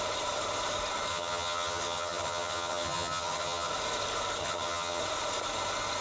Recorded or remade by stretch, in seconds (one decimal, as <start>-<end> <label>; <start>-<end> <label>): 0.0-1.1 recorded; 1.1-3.7 remade; 3.7-4.4 recorded; 4.4-5.0 remade; 5.0-6.0 recorded

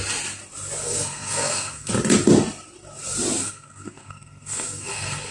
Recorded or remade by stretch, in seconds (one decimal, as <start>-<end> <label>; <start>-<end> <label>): 0.0-0.8 recorded; 0.8-1.9 remade; 1.9-3.4 recorded; 3.4-5.3 remade

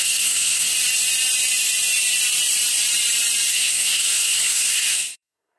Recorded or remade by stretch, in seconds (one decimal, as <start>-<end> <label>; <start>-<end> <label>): 0.0-0.7 remade; 0.7-3.5 recorded; 3.5-5.6 remade